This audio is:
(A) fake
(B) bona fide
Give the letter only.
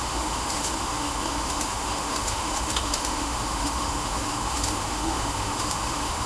A